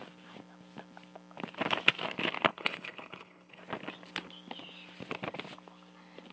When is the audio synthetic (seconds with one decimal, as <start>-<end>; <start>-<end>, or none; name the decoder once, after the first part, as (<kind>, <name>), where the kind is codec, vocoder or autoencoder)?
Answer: 2.5-3.6 (codec, HILCodec)